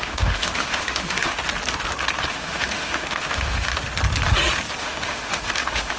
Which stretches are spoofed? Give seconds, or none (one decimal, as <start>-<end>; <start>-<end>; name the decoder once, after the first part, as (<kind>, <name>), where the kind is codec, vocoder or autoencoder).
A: 0.0-1.4 (autoencoder, DAC-VAE); 2.3-3.7; 4.8-6.0